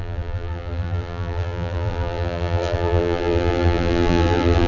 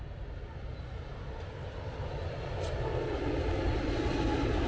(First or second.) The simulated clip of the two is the first